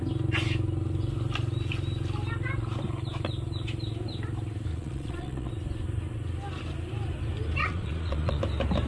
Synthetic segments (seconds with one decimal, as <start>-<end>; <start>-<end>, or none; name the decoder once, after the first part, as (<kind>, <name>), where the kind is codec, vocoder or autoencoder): 4.7-5.5 (vocoder, Vocos); 7.6-8.4